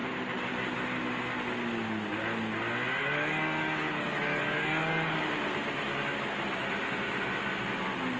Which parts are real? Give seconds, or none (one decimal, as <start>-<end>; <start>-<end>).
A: 0.0-3.0; 5.2-8.2

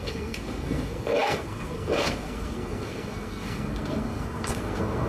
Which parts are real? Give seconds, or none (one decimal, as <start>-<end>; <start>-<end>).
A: none

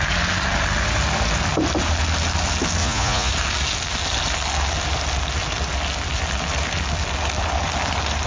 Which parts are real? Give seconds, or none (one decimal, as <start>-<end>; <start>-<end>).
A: 0.0-2.8; 3.3-8.3

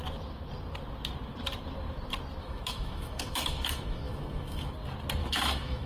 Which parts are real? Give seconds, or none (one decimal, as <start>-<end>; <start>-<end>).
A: 0.0-2.4; 4.7-5.2